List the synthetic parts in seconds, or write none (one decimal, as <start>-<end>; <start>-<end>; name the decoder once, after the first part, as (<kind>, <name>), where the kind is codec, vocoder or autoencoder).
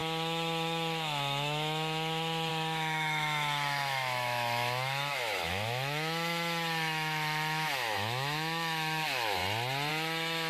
0.0-9.4 (autoencoder, DAC-VAE); 9.9-10.5